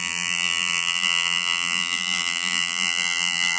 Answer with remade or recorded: remade